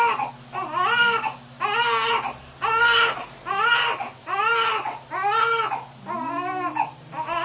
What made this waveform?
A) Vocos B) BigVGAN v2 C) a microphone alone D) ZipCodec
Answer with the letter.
C